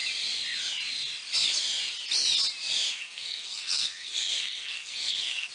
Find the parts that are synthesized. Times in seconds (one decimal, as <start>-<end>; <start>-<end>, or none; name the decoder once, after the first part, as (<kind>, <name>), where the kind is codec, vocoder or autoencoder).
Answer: 2.9-5.5 (codec, SNAC)